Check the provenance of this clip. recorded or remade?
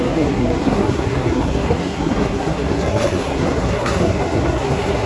remade